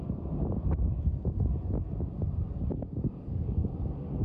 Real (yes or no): yes